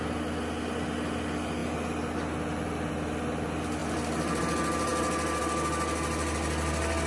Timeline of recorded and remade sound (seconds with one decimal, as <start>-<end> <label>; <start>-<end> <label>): 0.0-7.1 recorded

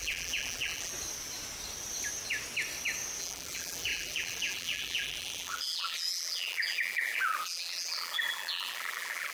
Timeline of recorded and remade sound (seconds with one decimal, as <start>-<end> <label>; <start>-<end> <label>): 0.0-0.9 remade; 0.9-3.2 recorded; 3.2-9.3 remade

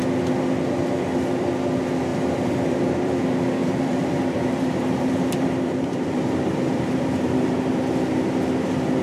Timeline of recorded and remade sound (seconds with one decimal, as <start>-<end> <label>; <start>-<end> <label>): 0.0-2.1 recorded; 2.1-3.2 remade; 3.2-3.6 recorded; 3.6-7.6 remade; 7.6-9.0 recorded

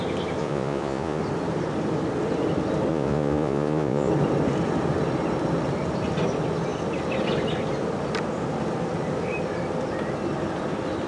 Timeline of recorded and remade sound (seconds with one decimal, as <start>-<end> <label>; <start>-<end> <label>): 0.0-0.4 recorded; 0.4-1.2 remade; 1.2-2.9 recorded; 2.9-4.1 remade; 4.1-11.1 recorded

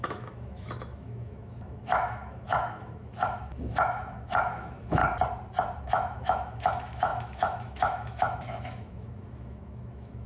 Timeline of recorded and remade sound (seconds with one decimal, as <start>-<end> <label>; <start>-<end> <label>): 0.0-5.0 remade; 5.0-5.8 recorded; 5.8-10.3 remade

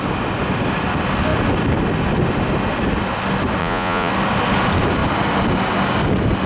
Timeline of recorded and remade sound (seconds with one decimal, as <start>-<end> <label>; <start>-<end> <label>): 0.0-3.6 recorded; 3.6-4.1 remade; 4.1-6.5 recorded

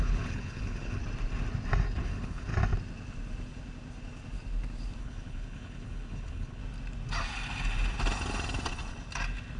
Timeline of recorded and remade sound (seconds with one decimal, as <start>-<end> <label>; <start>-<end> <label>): 0.0-1.0 remade; 1.0-2.0 recorded; 2.0-2.5 remade; 2.5-5.0 recorded; 5.0-6.6 remade; 6.6-9.6 recorded